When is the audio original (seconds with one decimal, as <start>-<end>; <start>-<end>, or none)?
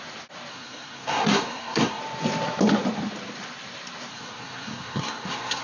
0.0-0.5; 2.0-4.1